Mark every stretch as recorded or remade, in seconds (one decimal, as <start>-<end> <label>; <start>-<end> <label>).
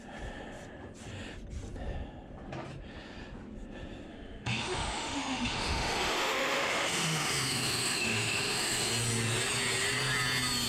0.0-4.1 recorded; 4.1-8.9 remade; 8.9-10.7 recorded